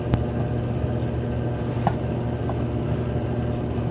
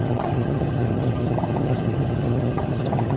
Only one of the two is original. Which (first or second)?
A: first